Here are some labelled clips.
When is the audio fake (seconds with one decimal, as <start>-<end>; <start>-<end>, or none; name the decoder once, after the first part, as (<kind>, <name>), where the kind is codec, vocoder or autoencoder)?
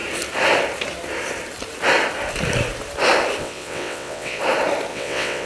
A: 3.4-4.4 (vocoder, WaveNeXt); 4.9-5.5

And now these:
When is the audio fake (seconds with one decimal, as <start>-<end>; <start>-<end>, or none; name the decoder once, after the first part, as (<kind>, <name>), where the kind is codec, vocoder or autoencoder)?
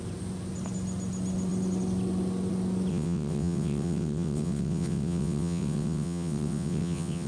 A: 2.9-7.3 (vocoder, WaveNeXt)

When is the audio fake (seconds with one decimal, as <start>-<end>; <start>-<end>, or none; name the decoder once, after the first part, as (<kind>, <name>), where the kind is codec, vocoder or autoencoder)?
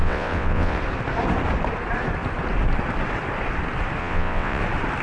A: 0.0-0.8 (vocoder, WaveNeXt); 4.0-4.6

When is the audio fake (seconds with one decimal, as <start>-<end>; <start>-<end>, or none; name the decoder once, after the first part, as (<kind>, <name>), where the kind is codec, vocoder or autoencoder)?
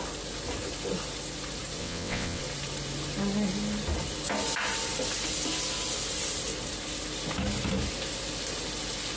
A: 1.8-2.4 (vocoder, WaveNeXt)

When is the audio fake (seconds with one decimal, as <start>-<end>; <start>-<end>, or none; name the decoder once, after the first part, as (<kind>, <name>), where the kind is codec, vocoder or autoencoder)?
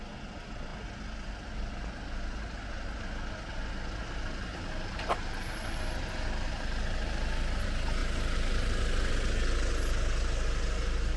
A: none